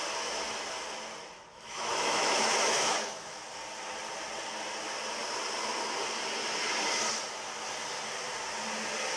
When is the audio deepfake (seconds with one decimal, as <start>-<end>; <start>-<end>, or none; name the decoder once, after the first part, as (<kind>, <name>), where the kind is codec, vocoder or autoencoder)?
1.5-3.4 (autoencoder, DAC-VAE)